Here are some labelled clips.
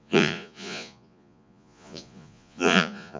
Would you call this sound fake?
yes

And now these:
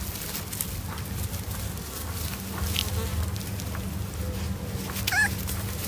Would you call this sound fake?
no